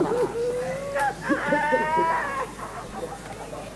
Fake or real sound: real